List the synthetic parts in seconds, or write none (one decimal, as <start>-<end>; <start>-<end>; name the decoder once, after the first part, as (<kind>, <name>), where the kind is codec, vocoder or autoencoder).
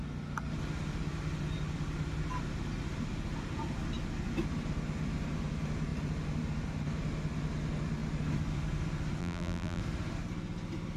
9.2-9.8 (vocoder, BigVGAN v2)